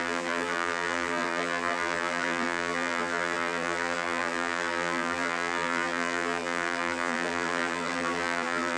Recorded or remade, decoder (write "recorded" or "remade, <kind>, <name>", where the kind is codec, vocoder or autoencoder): remade, vocoder, BigVGAN v2